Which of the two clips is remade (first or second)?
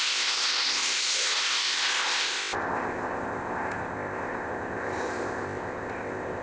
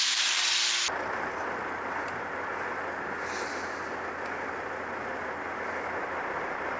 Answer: first